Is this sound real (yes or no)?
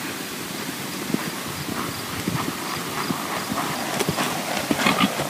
no